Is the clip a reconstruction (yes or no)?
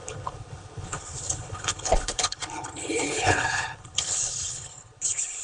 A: yes